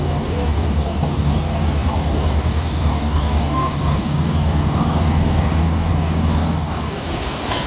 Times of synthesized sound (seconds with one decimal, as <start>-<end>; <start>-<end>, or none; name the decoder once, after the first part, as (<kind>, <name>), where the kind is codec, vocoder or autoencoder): 0.0-7.7 (codec, DAC)